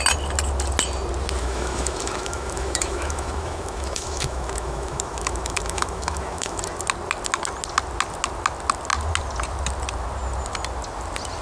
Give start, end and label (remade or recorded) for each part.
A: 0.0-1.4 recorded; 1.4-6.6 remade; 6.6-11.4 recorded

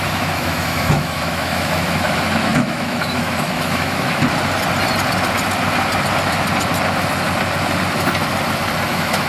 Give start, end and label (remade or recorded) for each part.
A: 0.0-4.2 remade; 4.2-8.9 recorded; 8.9-9.3 remade

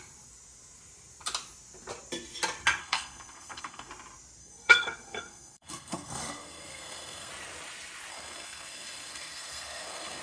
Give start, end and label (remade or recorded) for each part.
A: 0.0-2.8 recorded; 2.8-3.9 remade; 3.9-4.4 recorded; 4.4-7.3 remade; 7.3-8.1 recorded; 8.1-10.2 remade

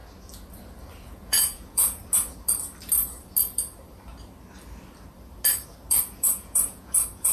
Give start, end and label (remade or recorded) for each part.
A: 0.0-1.1 recorded; 1.1-2.0 remade; 2.0-5.9 recorded; 5.9-7.3 remade